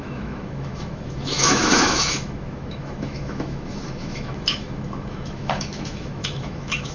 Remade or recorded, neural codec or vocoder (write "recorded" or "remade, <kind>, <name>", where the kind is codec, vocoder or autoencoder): remade, autoencoder, DAC-VAE